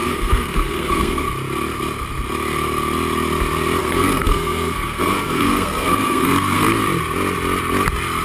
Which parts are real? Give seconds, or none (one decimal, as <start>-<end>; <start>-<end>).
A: 1.3-3.8; 6.8-8.2